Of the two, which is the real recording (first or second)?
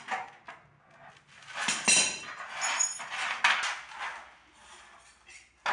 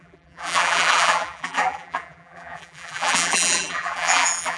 first